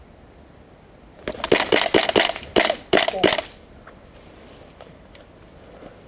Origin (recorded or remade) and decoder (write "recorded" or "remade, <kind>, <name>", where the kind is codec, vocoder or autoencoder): recorded